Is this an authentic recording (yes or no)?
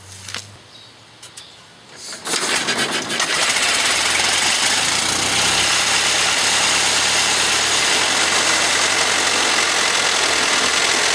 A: yes